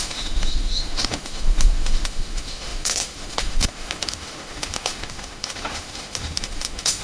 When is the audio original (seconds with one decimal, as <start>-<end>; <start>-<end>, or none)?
none